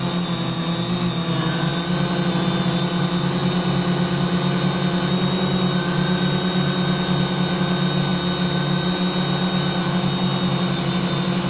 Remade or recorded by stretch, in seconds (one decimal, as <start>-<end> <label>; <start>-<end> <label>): 0.0-11.5 recorded